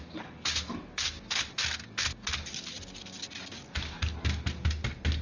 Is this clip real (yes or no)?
yes